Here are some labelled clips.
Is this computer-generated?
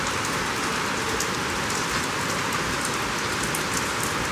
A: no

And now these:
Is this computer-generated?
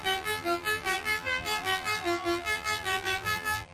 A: yes